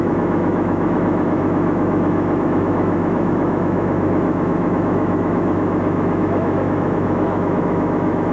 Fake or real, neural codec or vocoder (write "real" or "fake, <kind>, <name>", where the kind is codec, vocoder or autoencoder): fake, autoencoder, DAC-VAE